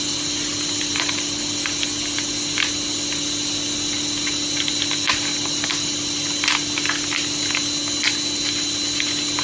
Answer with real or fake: real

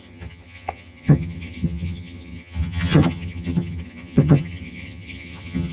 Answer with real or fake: fake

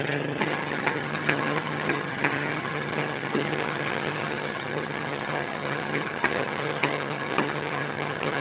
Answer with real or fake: fake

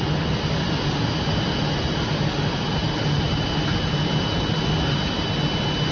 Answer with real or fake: real